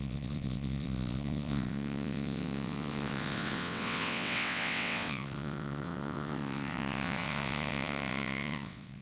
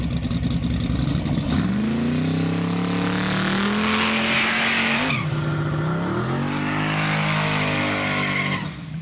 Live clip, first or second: second